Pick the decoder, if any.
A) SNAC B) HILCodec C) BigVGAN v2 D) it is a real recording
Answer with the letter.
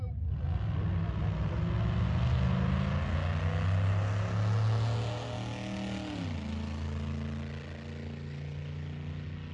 D